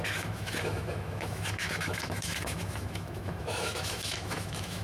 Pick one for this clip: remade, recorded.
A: remade